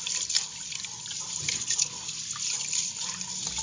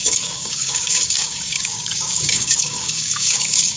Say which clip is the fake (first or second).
second